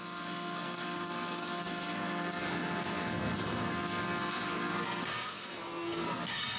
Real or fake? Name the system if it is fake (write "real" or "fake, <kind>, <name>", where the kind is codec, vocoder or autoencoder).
fake, codec, SNAC